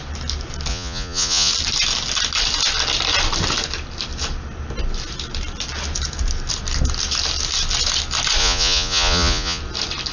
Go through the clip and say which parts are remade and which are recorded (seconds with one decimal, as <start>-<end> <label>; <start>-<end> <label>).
0.0-0.7 recorded; 0.7-1.5 remade; 1.5-8.4 recorded; 8.4-9.6 remade; 9.6-10.1 recorded